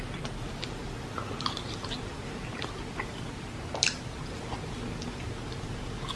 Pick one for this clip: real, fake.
real